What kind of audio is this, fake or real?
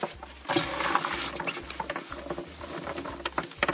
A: real